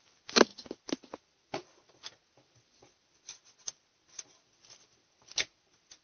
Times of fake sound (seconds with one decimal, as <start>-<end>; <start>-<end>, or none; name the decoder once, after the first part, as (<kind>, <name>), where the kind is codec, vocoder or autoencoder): none